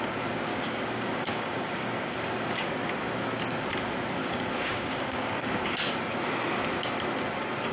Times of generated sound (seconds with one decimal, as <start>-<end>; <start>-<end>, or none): 0.5-2.7; 4.2-5.6